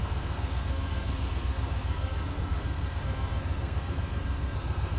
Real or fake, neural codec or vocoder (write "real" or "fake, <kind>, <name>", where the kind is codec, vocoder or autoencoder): fake, codec, SNAC